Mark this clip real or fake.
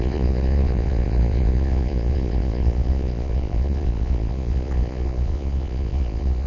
fake